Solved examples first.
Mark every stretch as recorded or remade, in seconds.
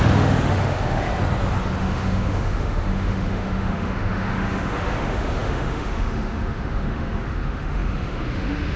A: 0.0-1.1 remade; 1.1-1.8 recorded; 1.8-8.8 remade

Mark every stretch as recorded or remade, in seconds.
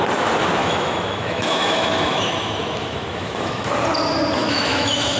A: 0.0-0.6 recorded; 0.6-3.7 remade; 3.7-4.4 recorded; 4.4-5.2 remade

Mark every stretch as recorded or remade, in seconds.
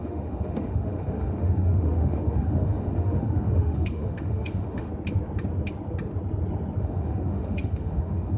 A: 0.0-4.9 remade; 4.9-6.8 recorded; 6.8-8.4 remade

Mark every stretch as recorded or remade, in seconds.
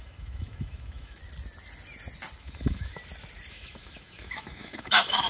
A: 0.0-1.2 remade; 1.2-2.4 recorded; 2.4-3.0 remade; 3.0-3.5 recorded; 3.5-5.3 remade